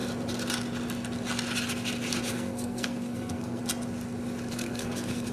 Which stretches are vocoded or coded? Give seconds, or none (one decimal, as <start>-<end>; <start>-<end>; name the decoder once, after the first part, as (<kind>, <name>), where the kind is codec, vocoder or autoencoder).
2.3-3.6 (codec, SNAC); 4.5-5.3